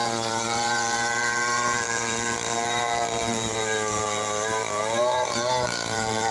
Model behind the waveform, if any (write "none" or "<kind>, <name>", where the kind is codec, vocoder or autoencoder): vocoder, BigVGAN v2